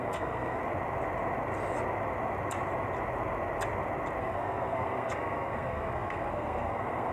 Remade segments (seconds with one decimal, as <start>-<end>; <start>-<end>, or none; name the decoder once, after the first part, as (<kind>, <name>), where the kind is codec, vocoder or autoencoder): 0.0-0.6 (codec, SNAC); 4.2-7.1